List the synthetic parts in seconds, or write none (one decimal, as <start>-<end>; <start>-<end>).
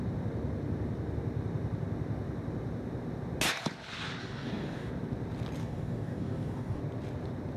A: 4.2-4.9; 5.6-6.8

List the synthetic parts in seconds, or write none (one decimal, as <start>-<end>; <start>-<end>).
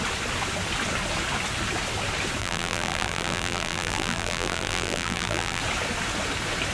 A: 2.4-5.6